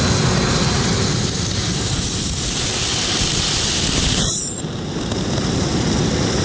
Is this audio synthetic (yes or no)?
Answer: no